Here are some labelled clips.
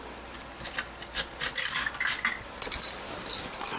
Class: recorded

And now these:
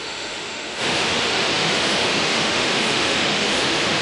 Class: remade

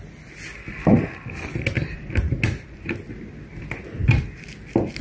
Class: recorded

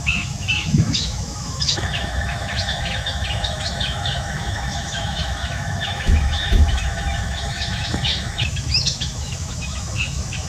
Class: remade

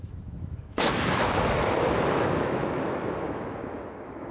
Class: remade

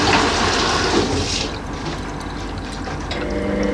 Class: recorded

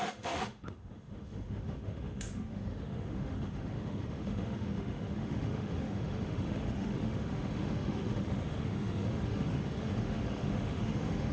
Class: remade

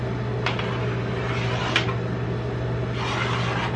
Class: recorded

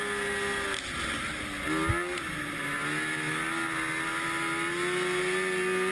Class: recorded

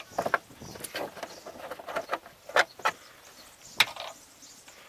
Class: recorded